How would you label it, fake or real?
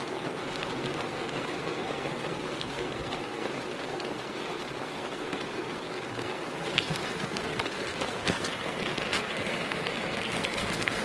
fake